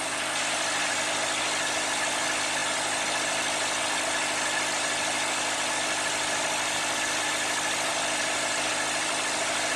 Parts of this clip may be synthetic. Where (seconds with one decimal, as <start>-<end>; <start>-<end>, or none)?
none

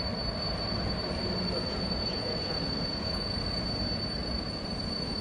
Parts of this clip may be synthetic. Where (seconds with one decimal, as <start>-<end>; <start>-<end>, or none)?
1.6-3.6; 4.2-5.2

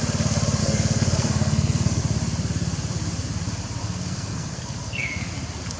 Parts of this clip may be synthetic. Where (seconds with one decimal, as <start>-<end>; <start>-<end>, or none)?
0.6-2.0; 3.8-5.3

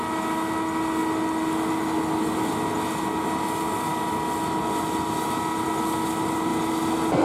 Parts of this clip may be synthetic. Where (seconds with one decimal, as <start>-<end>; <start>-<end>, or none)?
none

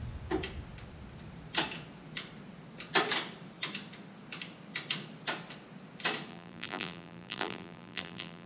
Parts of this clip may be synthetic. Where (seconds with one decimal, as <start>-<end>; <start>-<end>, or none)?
6.3-8.5

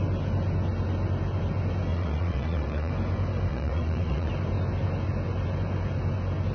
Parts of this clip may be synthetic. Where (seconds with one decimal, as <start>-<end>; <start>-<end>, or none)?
1.9-2.9; 3.5-4.3

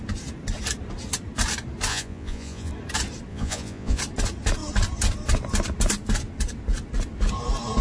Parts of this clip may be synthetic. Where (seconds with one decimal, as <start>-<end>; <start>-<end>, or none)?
1.9-2.7; 3.3-4.0